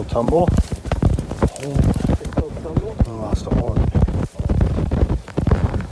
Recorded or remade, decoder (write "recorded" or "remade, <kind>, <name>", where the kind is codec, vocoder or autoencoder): remade, vocoder, BigVGAN v2